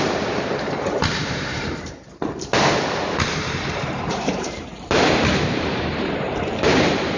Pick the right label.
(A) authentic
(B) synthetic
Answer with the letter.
B